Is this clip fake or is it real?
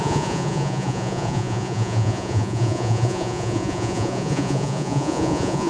fake